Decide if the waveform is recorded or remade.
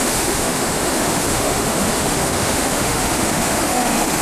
remade